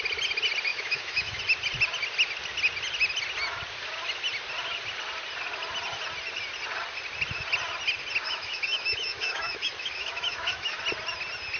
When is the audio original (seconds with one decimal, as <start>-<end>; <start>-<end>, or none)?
0.0-0.7; 1.4-8.2; 10.8-11.6